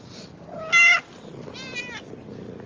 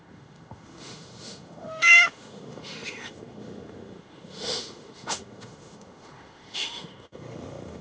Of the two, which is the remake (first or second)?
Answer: second